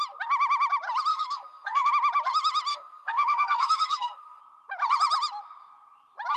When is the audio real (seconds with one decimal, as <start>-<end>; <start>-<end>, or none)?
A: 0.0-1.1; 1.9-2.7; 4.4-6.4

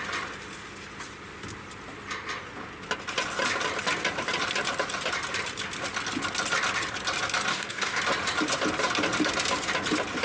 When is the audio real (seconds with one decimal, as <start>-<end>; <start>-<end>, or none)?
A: 0.0-7.5; 8.0-10.2

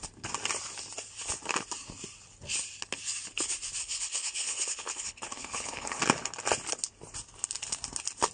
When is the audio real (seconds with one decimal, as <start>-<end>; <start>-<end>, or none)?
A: 0.0-3.8; 6.0-8.3

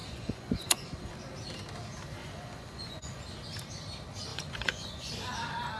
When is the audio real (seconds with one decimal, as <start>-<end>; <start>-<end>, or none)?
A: 1.1-2.2; 3.2-4.3; 5.1-5.8

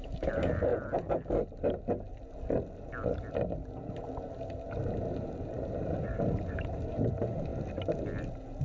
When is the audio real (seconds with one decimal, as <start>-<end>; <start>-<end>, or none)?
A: 0.7-3.3; 7.5-8.6

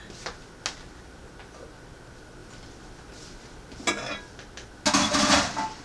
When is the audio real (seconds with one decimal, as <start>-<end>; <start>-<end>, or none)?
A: 0.0-5.8